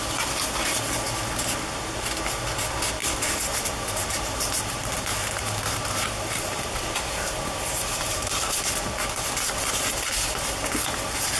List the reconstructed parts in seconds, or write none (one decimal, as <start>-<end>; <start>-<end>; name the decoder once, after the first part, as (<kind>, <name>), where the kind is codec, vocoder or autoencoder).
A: 3.0-6.7 (vocoder, BigVGAN v2); 7.9-8.5